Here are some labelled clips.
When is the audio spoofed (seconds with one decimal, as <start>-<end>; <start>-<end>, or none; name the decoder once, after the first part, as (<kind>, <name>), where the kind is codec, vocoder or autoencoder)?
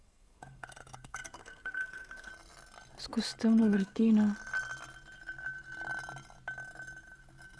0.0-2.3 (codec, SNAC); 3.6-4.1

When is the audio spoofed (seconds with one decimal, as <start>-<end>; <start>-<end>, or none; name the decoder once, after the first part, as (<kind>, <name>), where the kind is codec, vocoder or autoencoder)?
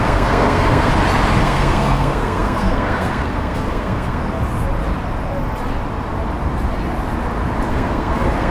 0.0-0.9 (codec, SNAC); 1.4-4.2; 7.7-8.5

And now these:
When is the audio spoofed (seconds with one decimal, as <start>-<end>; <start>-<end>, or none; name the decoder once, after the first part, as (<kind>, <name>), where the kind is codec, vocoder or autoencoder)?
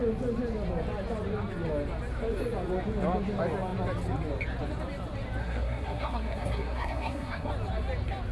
5.4-7.5 (codec, SNAC)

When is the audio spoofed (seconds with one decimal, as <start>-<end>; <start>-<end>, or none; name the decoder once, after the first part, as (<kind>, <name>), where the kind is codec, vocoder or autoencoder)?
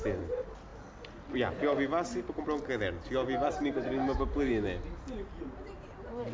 none